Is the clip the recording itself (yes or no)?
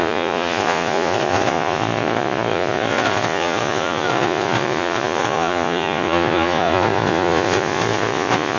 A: no